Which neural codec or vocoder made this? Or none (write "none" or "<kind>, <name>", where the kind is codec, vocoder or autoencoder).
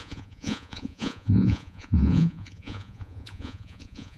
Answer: vocoder, Vocos